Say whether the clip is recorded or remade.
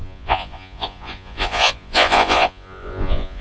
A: remade